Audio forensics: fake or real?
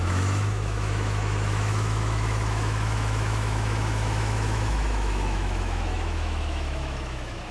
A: fake